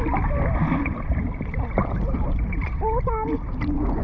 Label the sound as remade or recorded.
recorded